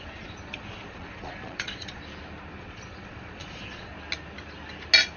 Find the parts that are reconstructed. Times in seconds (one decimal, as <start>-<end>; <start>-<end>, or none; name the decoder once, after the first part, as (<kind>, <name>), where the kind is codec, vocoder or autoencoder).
0.0-2.0 (vocoder, Vocos); 2.6-3.9